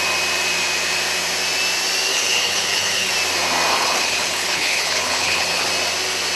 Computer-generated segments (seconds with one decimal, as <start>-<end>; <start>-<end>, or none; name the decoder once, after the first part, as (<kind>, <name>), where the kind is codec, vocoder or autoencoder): 2.1-3.1 (codec, HILCodec); 3.7-5.7